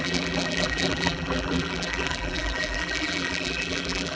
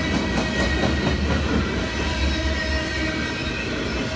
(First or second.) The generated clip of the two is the first